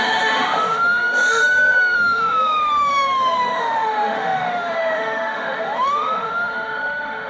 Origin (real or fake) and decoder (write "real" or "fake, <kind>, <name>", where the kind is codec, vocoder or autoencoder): fake, autoencoder, DAC-VAE